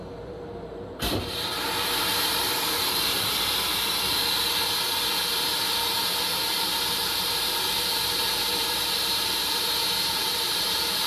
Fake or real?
fake